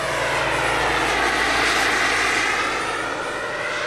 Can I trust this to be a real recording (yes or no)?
yes